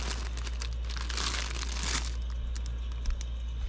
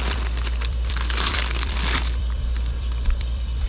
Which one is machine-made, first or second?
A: second